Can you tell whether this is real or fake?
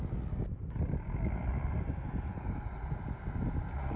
real